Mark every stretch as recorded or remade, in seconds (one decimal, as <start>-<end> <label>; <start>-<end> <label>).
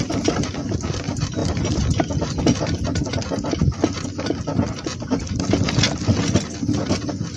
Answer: 0.0-7.4 recorded